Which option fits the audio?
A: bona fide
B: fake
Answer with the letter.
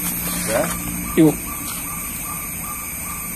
A